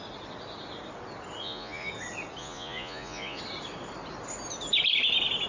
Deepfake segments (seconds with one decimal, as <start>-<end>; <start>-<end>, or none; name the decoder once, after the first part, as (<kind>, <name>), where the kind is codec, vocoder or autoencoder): 1.4-1.9 (vocoder, Vocos); 2.4-3.4